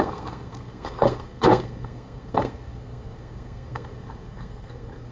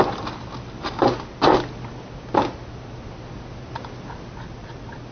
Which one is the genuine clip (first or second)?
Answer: second